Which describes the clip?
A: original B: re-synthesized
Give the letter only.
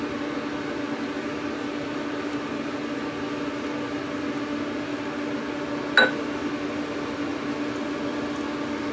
A